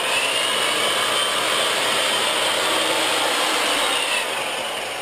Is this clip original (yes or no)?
yes